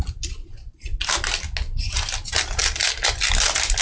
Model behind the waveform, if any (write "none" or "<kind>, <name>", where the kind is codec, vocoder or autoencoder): none